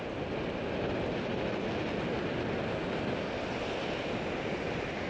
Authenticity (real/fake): real